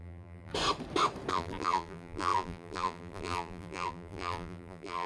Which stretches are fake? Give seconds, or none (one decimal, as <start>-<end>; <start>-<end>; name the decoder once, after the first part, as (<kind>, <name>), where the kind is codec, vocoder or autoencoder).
0.0-0.5 (vocoder, BigVGAN v2); 1.3-5.1